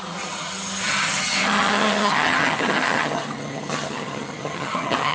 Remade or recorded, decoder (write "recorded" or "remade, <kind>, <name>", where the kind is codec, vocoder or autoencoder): remade, vocoder, HiFi-GAN